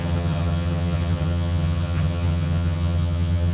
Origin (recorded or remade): remade